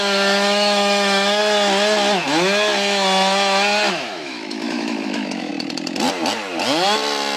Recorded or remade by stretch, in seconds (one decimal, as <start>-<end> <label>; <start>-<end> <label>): 0.0-1.4 remade; 1.4-3.9 recorded; 3.9-5.5 remade; 5.5-7.4 recorded